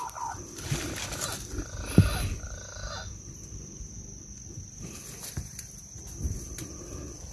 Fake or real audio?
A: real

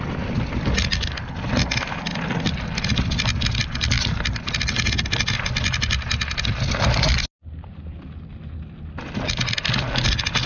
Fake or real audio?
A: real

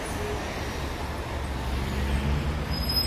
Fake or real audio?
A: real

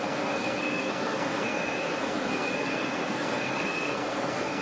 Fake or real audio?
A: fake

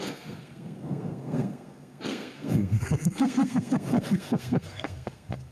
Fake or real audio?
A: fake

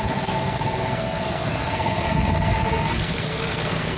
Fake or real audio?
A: fake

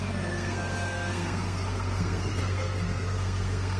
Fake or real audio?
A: fake